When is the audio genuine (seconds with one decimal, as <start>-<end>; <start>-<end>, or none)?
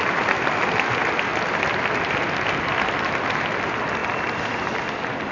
0.0-5.3